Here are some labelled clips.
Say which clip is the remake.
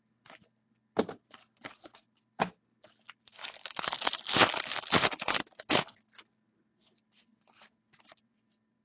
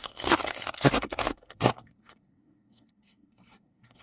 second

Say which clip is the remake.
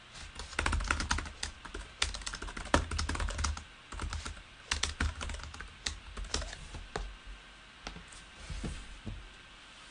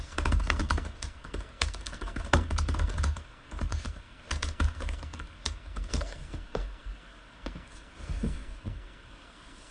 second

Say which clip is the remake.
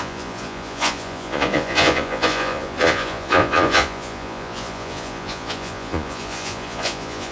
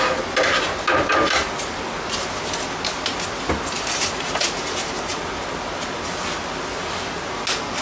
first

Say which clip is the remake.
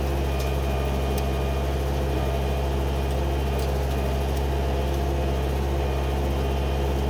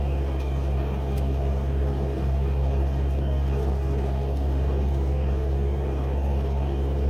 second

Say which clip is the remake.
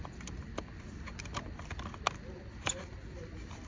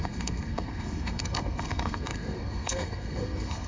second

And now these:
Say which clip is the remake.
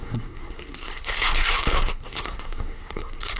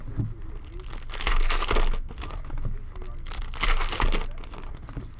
first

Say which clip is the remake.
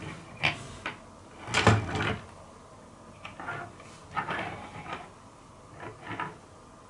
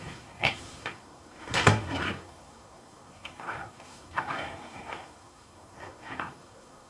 second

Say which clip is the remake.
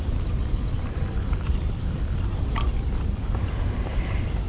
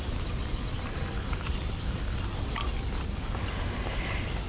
first